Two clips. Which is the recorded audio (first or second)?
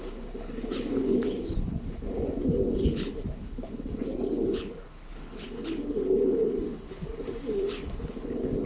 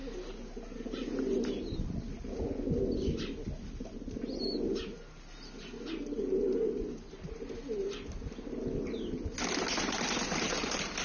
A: second